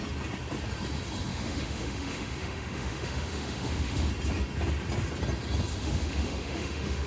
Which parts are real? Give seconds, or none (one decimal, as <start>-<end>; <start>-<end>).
0.0-1.3; 4.1-5.7